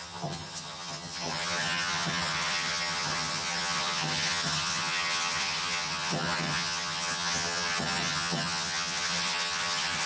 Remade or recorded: remade